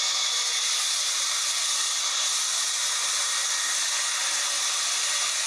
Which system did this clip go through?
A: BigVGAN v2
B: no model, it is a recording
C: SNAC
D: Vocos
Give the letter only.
B